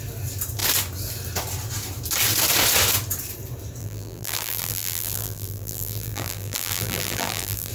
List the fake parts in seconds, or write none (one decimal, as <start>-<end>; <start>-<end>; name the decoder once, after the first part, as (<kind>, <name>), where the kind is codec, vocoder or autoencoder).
3.8-7.7 (vocoder, BigVGAN v2)